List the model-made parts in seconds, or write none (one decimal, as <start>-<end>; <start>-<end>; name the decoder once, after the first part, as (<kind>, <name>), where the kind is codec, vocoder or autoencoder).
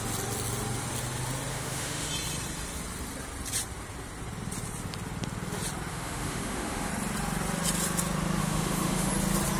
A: 1.5-2.1 (autoencoder, DAC-VAE); 5.9-6.9; 8.4-9.1